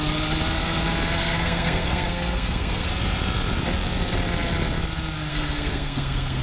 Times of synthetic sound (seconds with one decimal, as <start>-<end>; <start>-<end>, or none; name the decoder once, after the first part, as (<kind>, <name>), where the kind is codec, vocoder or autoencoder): 1.2-2.9 (codec, SNAC); 5.3-6.4